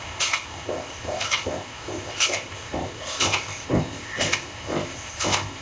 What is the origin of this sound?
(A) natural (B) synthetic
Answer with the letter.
B